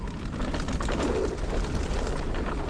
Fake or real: real